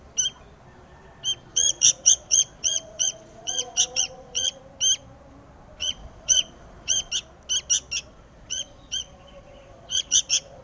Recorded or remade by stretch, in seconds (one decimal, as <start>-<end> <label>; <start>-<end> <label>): 0.0-1.5 recorded; 1.5-4.6 remade; 4.6-5.8 recorded; 5.8-7.1 remade; 7.1-8.1 recorded; 8.1-10.6 remade